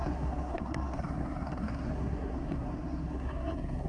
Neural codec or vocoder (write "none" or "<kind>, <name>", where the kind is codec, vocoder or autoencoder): codec, SNAC